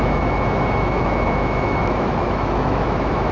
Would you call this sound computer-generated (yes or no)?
yes